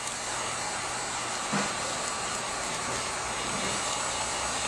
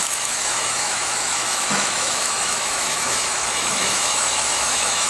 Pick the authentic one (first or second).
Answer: first